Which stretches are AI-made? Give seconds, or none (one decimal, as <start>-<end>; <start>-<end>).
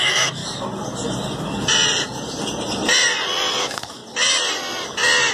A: 0.0-0.4; 3.6-4.0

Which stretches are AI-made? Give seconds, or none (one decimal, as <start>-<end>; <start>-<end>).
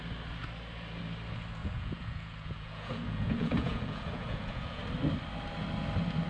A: 1.6-4.8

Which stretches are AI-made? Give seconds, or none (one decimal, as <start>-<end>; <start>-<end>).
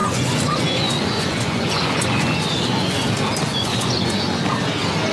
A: 0.0-3.1; 3.5-4.4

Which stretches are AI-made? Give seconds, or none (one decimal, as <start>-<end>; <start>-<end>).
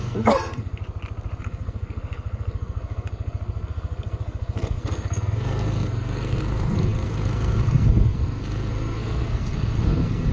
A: 0.0-0.8; 1.4-10.3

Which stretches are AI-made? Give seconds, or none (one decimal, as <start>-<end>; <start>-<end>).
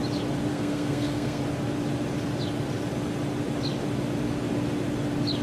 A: 0.5-1.4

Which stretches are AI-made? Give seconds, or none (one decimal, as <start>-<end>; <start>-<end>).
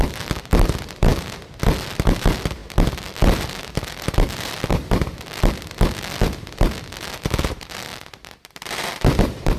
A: 0.0-9.6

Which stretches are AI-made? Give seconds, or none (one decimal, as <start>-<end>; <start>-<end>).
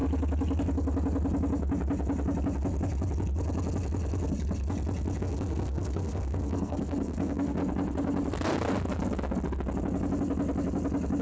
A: 5.2-7.6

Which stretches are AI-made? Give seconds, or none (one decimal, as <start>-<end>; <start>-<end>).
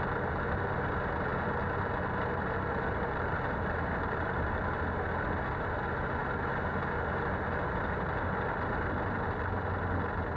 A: none